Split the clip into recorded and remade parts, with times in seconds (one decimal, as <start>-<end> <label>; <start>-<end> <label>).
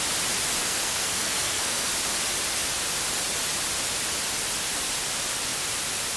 0.0-0.6 recorded; 0.6-1.9 remade; 1.9-6.2 recorded